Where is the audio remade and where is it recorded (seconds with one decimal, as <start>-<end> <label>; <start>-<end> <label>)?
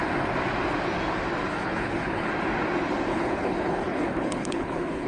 0.0-1.5 recorded; 1.5-2.3 remade; 2.3-3.1 recorded; 3.1-5.1 remade